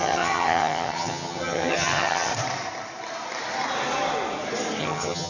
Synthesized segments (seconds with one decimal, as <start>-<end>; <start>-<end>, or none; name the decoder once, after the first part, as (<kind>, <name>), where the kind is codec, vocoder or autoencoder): 0.0-2.3 (vocoder, HiFi-GAN); 4.8-5.3

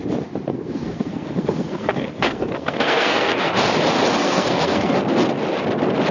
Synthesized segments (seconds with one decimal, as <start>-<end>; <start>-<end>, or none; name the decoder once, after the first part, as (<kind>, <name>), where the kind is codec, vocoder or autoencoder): 0.5-3.5 (codec, SNAC); 4.2-5.0

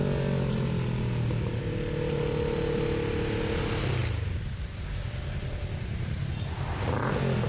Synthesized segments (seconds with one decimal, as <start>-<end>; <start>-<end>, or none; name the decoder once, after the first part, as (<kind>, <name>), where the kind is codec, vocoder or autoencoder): none

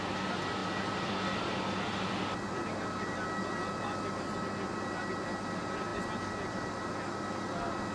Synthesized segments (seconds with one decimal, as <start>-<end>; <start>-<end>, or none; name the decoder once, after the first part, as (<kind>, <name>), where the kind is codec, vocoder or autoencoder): none

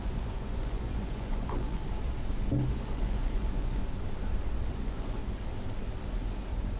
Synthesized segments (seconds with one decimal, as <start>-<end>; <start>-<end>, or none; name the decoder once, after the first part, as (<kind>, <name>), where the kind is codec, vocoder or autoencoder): 0.0-1.8 (vocoder, Vocos); 2.7-3.8; 4.7-5.2

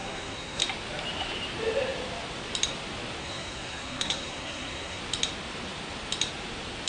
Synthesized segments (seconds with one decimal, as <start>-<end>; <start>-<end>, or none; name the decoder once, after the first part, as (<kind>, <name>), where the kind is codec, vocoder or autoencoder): 0.0-0.6 (codec, SNAC); 3.2-5.0

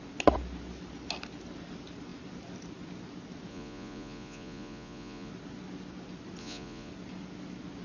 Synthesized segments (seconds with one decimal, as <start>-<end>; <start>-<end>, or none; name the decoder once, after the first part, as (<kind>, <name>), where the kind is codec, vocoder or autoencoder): 3.5-5.3 (vocoder, Vocos); 6.4-6.9